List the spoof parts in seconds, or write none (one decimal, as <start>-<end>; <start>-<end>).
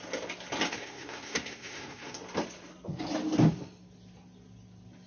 0.7-2.2